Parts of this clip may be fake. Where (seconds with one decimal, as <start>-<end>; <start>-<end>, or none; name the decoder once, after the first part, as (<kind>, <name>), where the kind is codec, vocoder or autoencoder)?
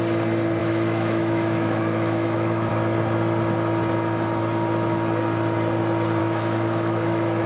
0.6-2.7 (autoencoder, DAC-VAE); 6.2-7.5